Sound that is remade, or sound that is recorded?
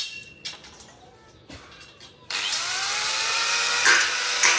remade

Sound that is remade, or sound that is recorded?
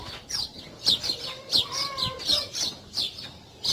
recorded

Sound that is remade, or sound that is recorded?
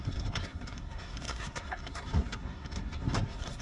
remade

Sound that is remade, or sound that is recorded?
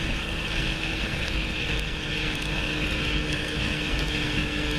remade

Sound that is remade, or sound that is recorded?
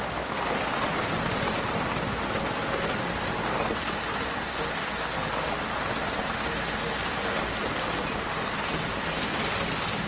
recorded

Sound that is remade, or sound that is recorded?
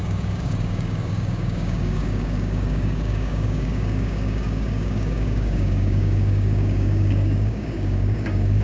remade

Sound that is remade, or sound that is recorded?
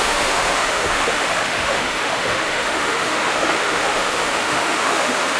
remade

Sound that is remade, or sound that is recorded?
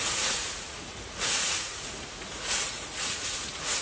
remade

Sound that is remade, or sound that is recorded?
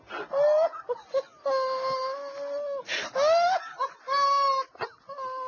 recorded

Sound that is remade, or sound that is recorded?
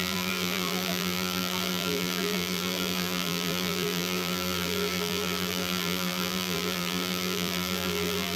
remade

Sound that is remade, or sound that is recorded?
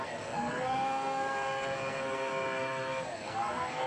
remade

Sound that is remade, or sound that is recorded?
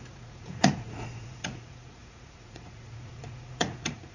remade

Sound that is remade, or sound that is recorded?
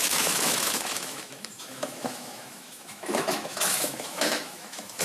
remade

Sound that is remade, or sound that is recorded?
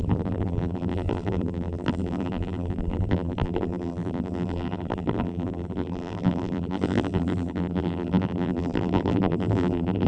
remade